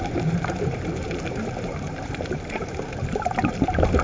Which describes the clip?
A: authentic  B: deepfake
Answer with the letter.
B